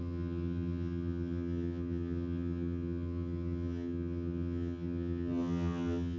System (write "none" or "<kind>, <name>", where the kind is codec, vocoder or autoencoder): vocoder, HiFi-GAN